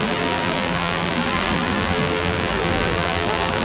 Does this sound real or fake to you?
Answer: fake